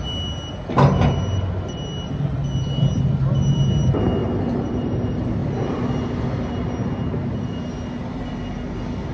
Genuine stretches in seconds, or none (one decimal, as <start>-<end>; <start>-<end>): 0.0-4.2; 4.7-9.1